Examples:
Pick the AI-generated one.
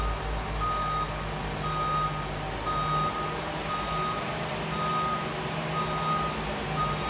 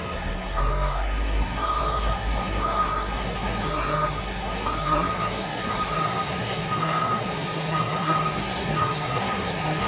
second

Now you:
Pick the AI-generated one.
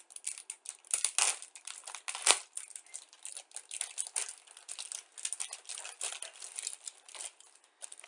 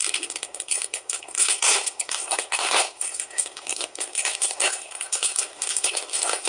second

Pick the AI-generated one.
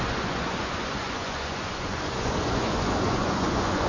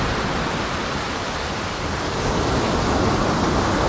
first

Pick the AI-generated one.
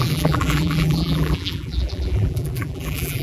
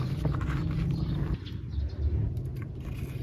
first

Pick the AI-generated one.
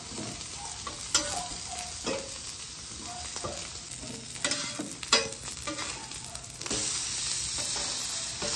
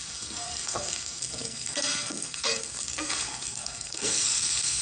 second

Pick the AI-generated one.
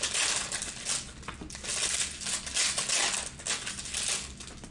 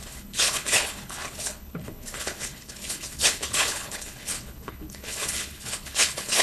second